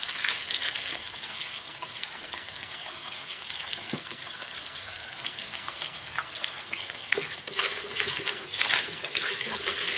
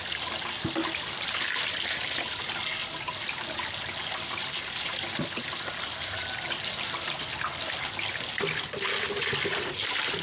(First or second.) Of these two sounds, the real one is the second